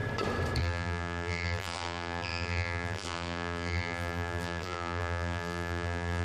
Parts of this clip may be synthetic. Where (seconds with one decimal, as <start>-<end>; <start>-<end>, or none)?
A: 0.6-6.2